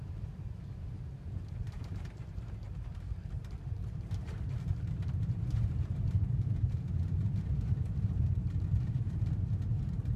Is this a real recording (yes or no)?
no